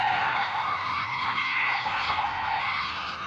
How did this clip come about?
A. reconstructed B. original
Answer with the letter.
A